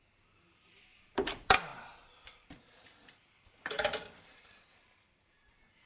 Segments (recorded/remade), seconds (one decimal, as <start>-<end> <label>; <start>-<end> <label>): 0.0-5.9 remade